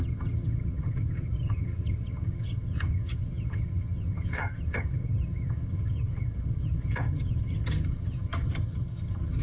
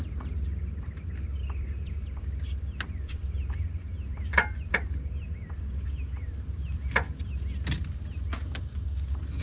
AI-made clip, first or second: first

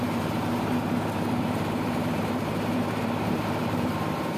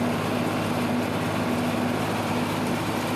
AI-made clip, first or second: first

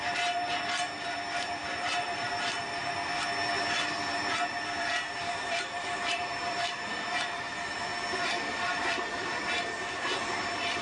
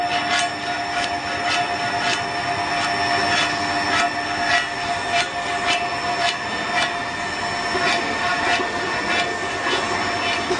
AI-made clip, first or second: first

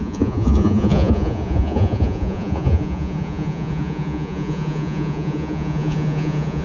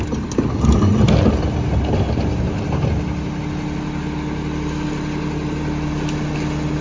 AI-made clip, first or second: first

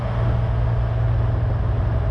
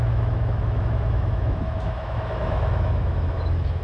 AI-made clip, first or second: second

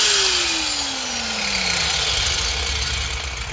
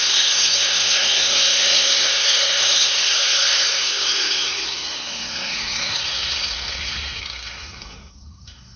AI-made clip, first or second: second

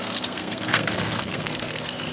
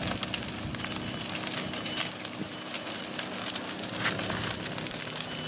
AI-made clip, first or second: first